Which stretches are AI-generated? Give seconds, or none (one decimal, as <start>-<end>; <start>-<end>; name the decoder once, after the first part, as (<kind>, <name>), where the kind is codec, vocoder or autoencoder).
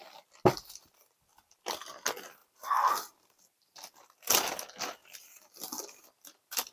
none